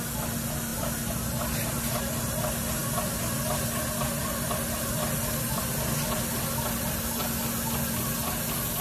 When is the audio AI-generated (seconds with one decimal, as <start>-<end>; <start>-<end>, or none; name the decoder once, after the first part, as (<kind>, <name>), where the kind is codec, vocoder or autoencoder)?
none